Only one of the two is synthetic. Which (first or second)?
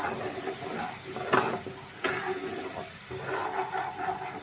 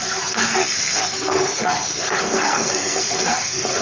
second